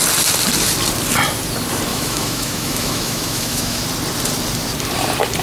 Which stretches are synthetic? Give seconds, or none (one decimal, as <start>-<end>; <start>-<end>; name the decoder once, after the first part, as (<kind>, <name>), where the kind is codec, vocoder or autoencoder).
1.9-3.8 (autoencoder, DAC-VAE)